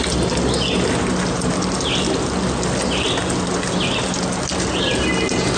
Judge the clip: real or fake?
real